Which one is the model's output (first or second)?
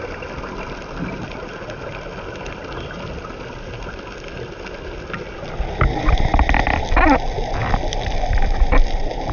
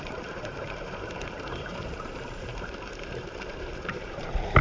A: second